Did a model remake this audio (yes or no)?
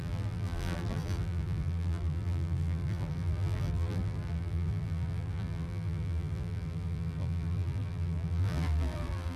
yes